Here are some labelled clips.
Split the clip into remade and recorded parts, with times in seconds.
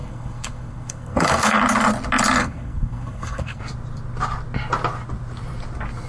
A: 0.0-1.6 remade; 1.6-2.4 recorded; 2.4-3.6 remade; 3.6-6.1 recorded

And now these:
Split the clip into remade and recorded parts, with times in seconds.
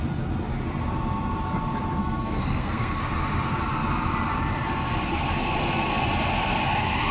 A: 0.0-2.0 recorded; 2.0-3.0 remade; 3.0-7.1 recorded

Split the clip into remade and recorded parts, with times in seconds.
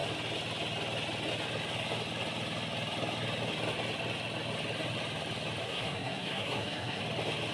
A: 0.0-5.6 recorded; 5.6-7.0 remade; 7.0-7.5 recorded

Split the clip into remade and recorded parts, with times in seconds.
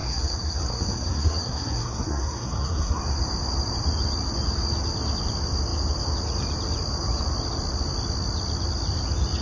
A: 0.0-3.0 remade; 3.0-9.4 recorded